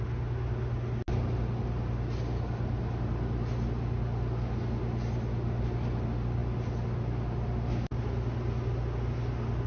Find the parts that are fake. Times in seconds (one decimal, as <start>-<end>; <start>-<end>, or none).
none